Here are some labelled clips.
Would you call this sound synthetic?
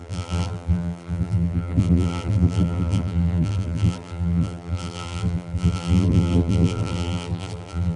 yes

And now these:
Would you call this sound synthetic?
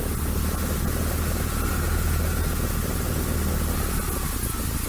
no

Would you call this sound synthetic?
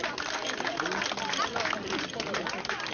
no